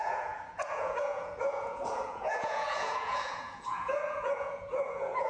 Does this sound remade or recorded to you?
remade